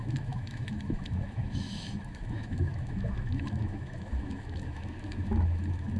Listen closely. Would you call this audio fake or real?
fake